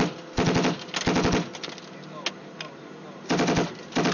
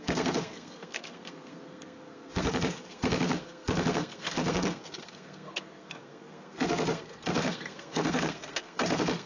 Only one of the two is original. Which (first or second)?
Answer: first